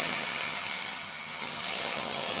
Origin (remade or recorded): remade